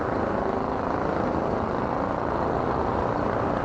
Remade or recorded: recorded